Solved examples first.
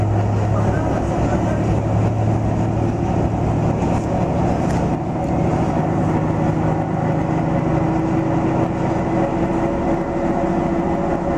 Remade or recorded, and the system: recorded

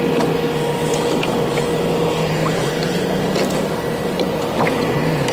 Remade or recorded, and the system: recorded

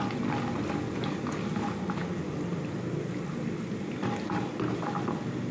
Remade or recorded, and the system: recorded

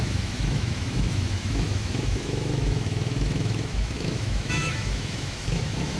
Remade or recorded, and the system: remade, autoencoder, DAC-VAE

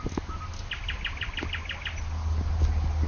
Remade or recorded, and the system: recorded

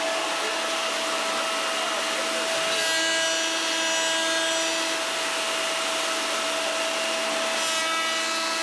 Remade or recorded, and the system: recorded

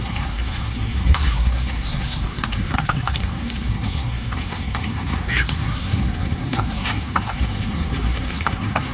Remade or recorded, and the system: remade, codec, SNAC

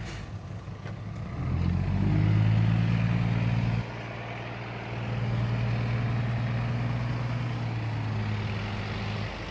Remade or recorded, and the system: recorded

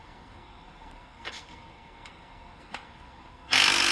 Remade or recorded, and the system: remade, codec, SNAC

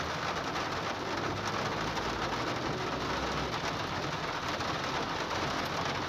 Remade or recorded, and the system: recorded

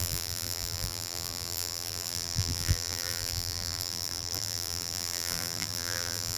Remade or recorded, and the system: remade, vocoder, BigVGAN v2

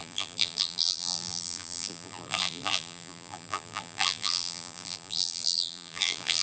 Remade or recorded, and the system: remade, vocoder, BigVGAN v2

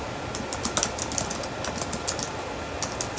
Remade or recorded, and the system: recorded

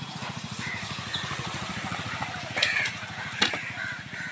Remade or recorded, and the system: remade, vocoder, Vocos